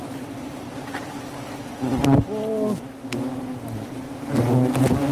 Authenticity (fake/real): real